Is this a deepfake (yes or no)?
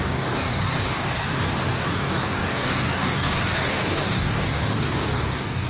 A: yes